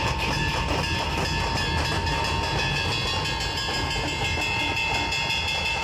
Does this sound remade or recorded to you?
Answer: recorded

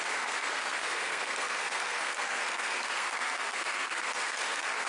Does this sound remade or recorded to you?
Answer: remade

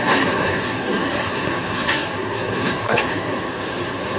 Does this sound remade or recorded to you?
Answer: remade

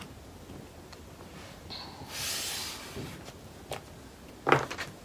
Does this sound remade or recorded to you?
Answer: recorded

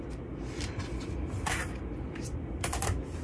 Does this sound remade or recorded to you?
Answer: recorded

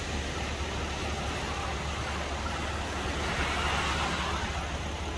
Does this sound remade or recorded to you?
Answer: recorded